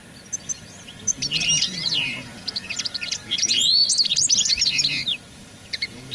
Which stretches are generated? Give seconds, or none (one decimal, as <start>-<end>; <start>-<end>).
1.7-3.8; 5.3-6.1

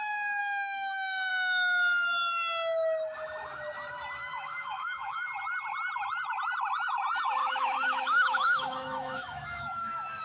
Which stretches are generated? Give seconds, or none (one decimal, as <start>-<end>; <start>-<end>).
0.4-1.3; 4.2-5.3; 7.4-10.2

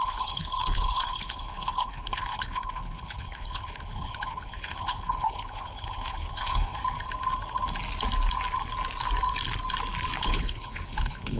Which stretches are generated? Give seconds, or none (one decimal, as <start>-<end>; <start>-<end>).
0.0-6.8; 10.2-11.4

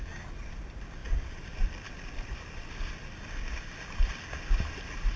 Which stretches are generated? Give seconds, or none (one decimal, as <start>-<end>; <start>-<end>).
none

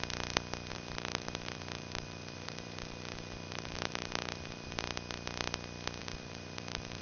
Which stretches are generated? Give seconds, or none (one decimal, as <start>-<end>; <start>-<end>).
0.7-4.8; 6.0-7.0

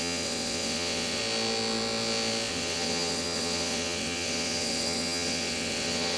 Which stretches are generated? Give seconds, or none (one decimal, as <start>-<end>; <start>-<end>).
0.0-1.2; 2.5-6.2

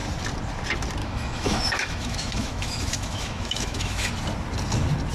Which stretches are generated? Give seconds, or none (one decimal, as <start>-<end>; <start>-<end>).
1.0-4.1